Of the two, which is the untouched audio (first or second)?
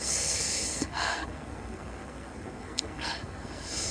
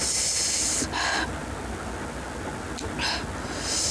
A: second